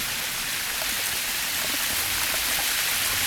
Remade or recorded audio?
recorded